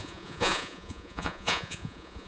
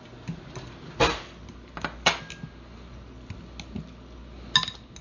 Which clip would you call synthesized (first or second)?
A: first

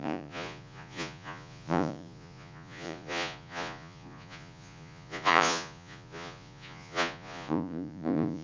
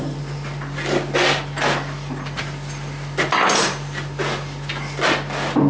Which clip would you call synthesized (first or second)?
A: first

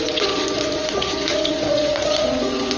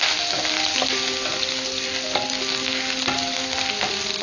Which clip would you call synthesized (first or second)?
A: first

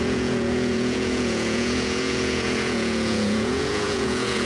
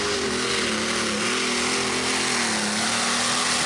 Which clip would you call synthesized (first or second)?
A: first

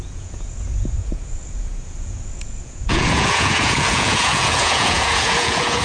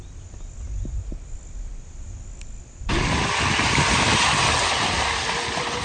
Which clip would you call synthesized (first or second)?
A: first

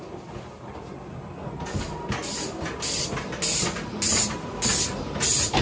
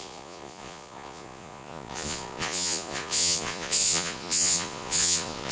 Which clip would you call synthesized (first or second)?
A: second